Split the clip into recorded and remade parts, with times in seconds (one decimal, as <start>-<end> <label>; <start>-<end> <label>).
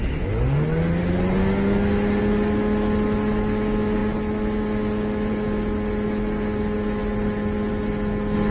0.0-8.5 recorded